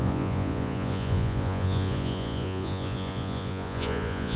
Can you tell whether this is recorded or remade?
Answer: remade